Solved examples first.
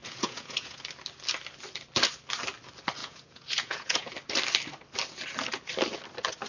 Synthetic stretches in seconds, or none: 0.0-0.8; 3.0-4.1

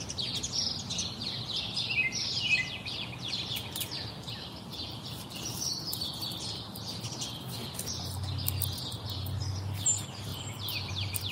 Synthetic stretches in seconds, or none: 10.3-10.9